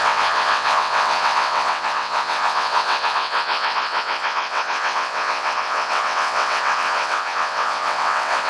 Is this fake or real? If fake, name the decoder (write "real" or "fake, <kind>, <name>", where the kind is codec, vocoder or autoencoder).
fake, vocoder, WaveNeXt